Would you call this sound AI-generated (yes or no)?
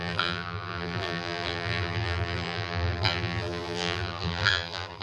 yes